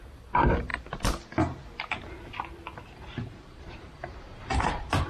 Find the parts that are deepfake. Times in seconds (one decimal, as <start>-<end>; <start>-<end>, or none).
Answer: 0.0-0.7; 3.6-5.1